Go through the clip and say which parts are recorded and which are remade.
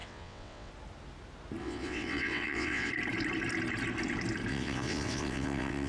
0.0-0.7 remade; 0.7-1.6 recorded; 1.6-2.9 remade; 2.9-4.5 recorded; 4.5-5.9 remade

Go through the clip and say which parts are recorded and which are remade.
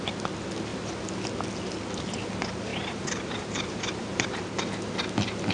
0.0-0.7 recorded; 0.7-1.2 remade; 1.2-2.7 recorded; 2.7-4.6 remade; 4.6-5.5 recorded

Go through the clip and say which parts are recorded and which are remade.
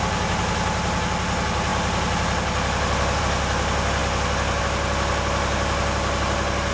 0.0-6.7 recorded